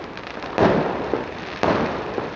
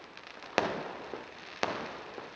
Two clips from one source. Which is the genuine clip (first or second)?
second